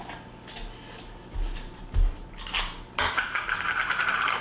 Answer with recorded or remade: recorded